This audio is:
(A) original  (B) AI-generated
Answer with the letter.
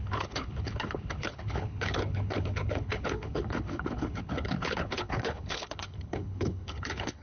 B